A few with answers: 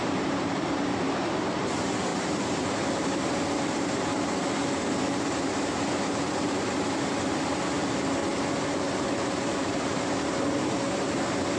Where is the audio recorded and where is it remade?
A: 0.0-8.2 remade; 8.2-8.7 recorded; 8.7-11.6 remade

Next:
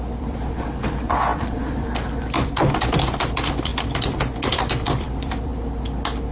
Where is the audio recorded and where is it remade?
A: 0.0-3.7 remade; 3.7-4.5 recorded; 4.5-5.5 remade; 5.5-6.3 recorded